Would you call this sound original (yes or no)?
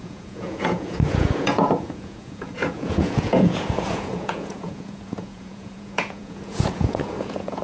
no